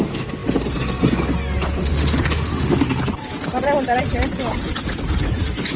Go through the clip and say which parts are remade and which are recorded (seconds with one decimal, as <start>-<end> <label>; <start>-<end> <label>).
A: 0.0-1.8 recorded; 1.8-3.0 remade; 3.0-5.8 recorded